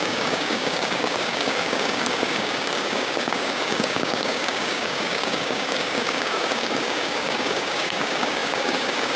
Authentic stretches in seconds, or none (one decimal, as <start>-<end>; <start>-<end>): none